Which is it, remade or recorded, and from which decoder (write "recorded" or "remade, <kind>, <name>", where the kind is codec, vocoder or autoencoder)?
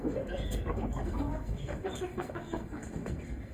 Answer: remade, codec, SNAC